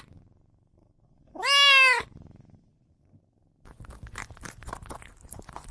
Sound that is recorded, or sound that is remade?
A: recorded